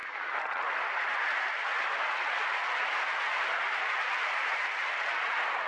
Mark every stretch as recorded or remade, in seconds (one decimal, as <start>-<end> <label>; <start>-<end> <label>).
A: 0.0-5.7 recorded